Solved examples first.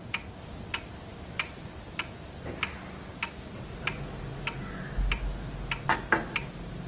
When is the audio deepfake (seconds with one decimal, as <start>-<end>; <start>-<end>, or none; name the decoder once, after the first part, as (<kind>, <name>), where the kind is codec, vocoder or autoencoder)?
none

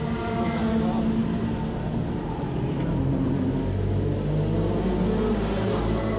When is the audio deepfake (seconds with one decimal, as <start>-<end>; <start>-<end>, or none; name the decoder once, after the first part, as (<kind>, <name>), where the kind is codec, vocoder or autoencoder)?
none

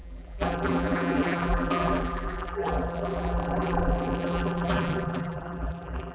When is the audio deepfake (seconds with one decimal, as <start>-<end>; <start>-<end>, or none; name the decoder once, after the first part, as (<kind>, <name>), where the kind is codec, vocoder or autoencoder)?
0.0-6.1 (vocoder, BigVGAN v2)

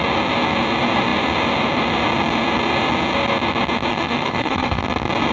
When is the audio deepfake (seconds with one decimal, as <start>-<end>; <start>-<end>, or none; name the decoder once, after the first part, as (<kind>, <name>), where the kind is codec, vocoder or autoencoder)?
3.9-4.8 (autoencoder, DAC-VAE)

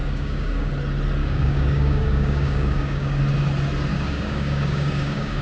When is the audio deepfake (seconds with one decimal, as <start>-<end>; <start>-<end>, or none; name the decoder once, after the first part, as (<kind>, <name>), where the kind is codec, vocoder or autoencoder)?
0.0-0.7 (codec, DAC); 1.2-3.2; 3.9-5.4

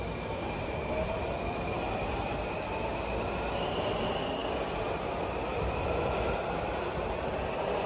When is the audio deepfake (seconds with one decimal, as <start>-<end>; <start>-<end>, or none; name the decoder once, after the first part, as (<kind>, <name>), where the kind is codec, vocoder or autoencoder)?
none

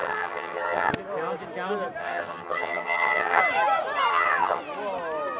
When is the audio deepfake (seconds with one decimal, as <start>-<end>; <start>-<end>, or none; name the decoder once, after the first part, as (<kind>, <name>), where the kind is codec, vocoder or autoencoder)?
0.0-0.9 (vocoder, HiFi-GAN); 2.0-3.4; 4.1-4.6

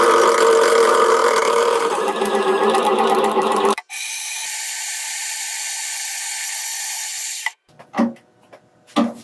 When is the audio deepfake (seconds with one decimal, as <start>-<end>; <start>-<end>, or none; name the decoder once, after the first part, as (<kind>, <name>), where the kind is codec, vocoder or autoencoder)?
1.2-5.3 (vocoder, BigVGAN v2); 6.1-7.7